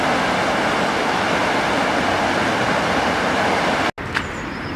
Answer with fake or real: real